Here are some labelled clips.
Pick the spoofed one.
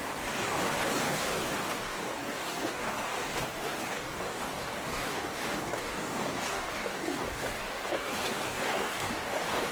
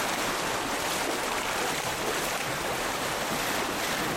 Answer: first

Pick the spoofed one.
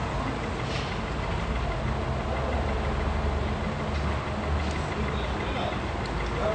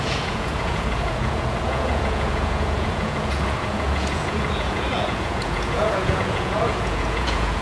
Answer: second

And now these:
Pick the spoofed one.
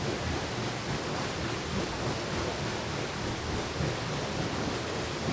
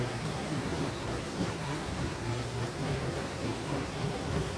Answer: second